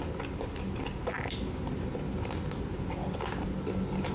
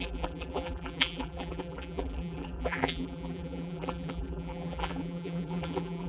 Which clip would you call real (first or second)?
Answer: first